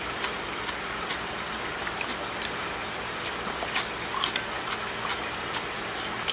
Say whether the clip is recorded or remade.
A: recorded